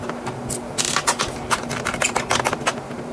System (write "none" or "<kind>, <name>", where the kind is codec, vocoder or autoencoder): none